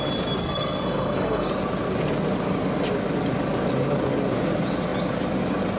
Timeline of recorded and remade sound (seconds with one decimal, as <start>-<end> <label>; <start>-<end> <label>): 0.0-0.4 recorded; 0.4-1.5 remade; 1.5-5.8 recorded